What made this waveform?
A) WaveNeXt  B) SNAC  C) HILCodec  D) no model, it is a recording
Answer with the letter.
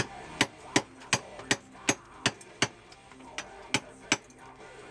D